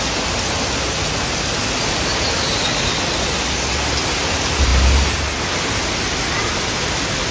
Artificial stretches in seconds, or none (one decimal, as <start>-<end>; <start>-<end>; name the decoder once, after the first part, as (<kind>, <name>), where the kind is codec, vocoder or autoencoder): none